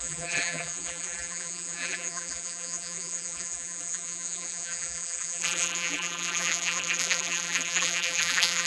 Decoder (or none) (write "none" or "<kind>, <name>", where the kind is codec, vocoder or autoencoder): vocoder, BigVGAN v2